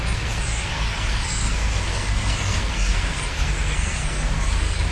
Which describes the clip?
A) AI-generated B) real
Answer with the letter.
A